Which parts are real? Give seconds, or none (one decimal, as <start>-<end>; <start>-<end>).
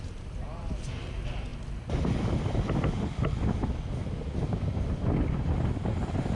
0.0-6.4